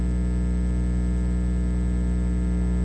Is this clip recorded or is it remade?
recorded